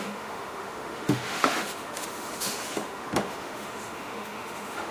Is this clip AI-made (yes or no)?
yes